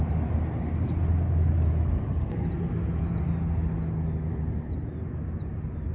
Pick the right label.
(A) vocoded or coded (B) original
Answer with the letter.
B